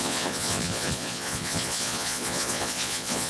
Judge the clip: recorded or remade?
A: remade